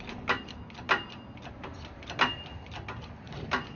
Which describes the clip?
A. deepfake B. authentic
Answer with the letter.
B